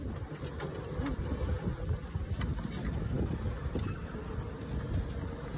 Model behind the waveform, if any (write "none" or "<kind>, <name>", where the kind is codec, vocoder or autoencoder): none